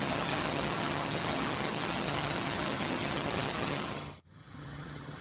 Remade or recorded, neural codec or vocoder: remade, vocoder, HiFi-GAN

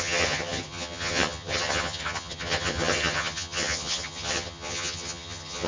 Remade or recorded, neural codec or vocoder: remade, vocoder, HiFi-GAN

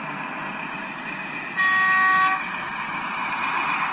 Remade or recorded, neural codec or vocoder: recorded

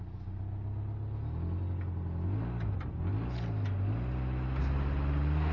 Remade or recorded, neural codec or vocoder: recorded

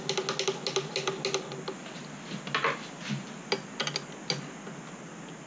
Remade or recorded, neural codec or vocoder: recorded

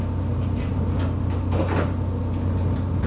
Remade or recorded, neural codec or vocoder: recorded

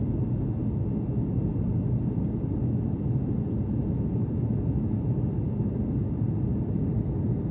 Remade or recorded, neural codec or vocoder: recorded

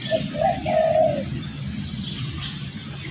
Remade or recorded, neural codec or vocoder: recorded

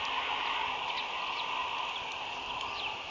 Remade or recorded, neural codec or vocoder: recorded